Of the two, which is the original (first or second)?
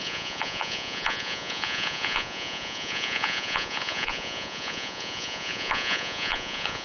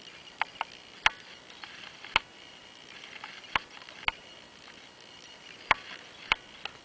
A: second